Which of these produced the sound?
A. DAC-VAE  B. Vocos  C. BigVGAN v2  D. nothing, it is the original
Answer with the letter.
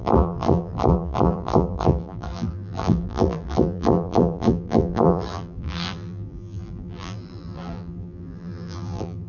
C